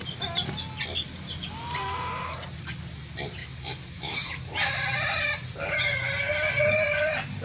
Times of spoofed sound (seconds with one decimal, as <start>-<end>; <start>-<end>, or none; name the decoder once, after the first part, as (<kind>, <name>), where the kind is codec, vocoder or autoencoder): 3.4-4.3 (autoencoder, DAC-VAE)